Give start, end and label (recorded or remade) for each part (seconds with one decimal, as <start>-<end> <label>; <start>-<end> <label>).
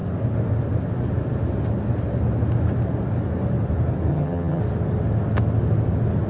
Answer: 0.0-4.1 recorded; 4.1-4.6 remade; 4.6-6.3 recorded